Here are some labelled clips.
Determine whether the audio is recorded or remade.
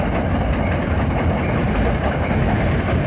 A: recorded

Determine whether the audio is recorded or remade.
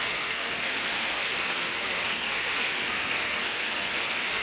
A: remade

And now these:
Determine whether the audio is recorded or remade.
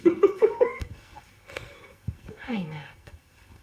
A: remade